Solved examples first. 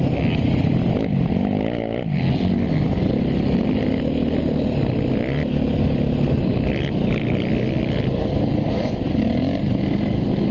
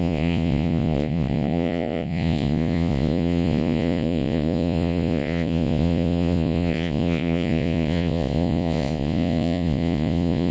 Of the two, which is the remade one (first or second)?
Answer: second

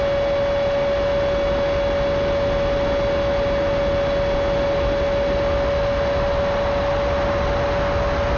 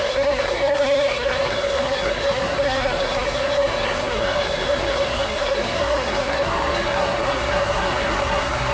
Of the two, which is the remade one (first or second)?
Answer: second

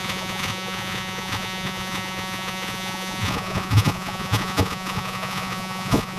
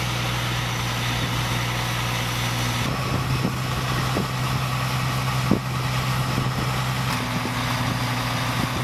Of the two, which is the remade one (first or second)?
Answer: first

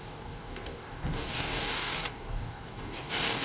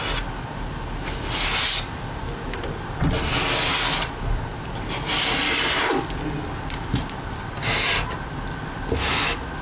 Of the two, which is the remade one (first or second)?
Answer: first